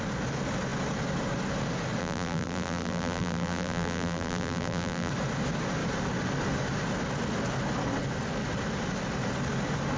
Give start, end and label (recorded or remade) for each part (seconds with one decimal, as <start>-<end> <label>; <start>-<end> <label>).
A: 0.0-2.0 recorded; 2.0-5.1 remade; 5.1-10.0 recorded